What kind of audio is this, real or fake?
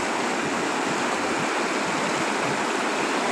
real